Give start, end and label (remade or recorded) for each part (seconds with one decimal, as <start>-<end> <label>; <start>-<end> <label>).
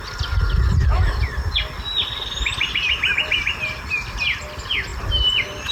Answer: 0.0-5.7 recorded